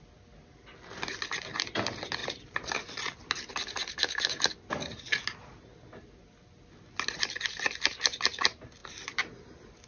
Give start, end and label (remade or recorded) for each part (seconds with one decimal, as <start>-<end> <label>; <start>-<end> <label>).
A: 0.0-2.2 recorded; 2.2-3.3 remade; 3.3-8.8 recorded; 8.8-9.9 remade